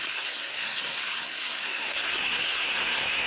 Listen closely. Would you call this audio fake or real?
fake